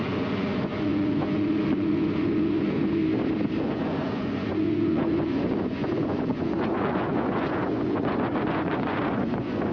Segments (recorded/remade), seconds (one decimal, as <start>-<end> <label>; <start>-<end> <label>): 0.0-3.0 remade; 3.0-3.6 recorded; 3.6-9.7 remade

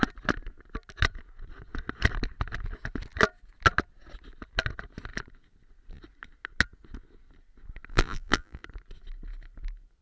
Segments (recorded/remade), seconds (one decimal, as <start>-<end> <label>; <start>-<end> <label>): 0.0-7.9 recorded; 7.9-8.6 remade; 8.6-10.0 recorded